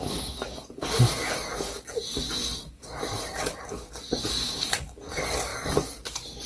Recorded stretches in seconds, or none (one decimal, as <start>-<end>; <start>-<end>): none